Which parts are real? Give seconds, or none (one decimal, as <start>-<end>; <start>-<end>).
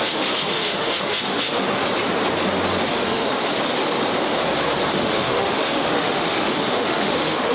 1.6-2.9; 3.4-4.9